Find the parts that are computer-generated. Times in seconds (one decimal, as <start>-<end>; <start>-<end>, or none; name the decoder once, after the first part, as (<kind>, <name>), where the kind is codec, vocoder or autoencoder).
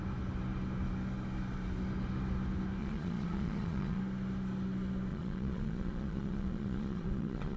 2.8-4.0 (vocoder, Vocos); 5.1-7.6